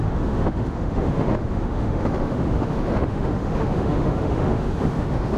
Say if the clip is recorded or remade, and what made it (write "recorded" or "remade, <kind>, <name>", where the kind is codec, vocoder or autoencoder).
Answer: remade, autoencoder, DAC-VAE